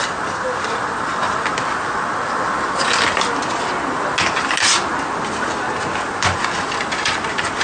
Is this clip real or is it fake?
real